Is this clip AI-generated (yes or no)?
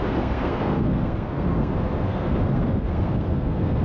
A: yes